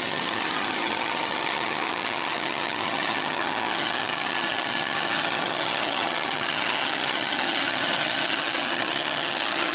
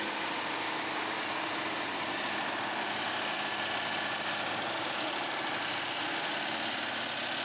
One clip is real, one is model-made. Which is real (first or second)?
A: second